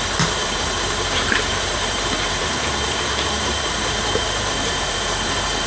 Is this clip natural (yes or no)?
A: no